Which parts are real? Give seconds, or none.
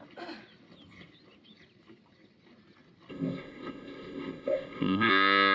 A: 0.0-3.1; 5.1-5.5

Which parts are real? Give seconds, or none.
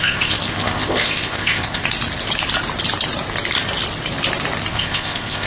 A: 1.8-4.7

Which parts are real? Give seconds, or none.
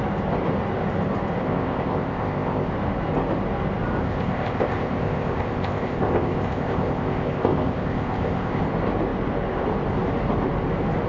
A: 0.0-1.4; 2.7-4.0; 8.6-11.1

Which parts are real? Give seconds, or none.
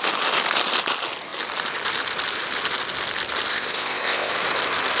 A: 0.0-3.5; 4.3-5.0